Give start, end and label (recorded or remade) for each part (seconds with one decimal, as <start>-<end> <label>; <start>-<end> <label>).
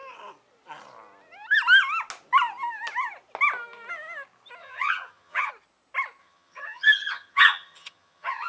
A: 0.0-4.6 recorded; 4.6-5.5 remade; 5.5-6.2 recorded; 6.2-8.5 remade